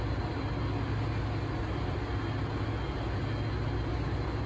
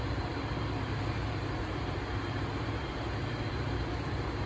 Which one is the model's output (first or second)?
second